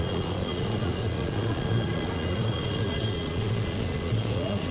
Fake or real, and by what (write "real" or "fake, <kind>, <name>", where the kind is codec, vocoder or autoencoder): fake, vocoder, Vocos